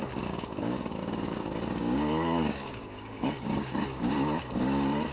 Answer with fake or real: fake